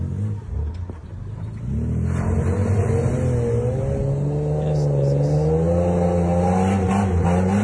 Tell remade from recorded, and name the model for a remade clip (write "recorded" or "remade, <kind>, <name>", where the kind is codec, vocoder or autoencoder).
recorded